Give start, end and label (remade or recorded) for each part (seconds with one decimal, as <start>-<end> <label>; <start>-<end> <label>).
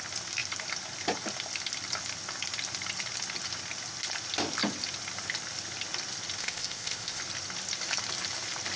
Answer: 0.0-6.4 recorded; 6.4-7.2 remade; 7.2-8.8 recorded